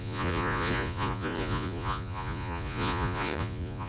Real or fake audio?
fake